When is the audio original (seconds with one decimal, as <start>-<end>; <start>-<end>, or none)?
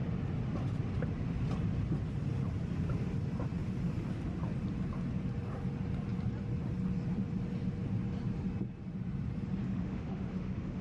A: 0.0-9.6